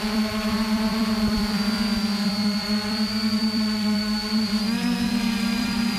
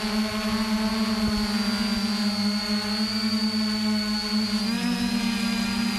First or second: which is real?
second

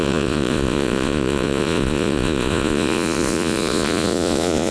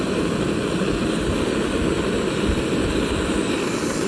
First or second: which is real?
second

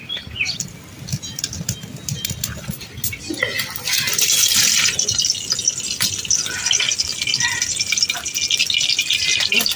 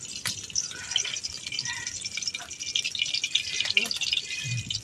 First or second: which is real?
first